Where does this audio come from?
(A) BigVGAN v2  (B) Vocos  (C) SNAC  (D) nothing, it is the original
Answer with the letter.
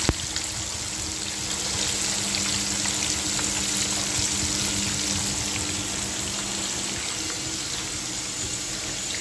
D